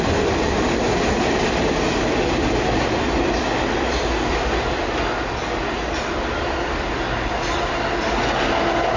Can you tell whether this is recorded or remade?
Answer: recorded